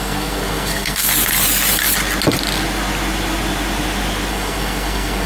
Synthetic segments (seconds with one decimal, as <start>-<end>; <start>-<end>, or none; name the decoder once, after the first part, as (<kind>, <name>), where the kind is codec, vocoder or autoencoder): 0.0-1.1 (codec, SNAC); 4.3-5.3